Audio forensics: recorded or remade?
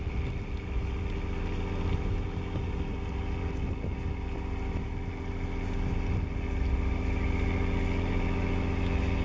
recorded